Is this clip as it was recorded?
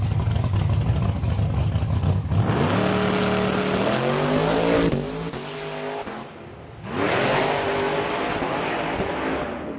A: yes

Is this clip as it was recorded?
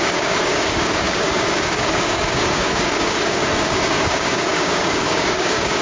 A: no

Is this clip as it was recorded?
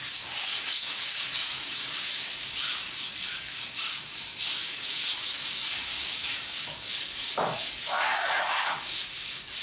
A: no